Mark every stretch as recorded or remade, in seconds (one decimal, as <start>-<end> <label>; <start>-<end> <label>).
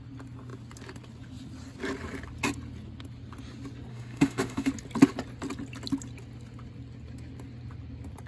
0.0-3.9 recorded; 3.9-4.7 remade; 4.7-8.3 recorded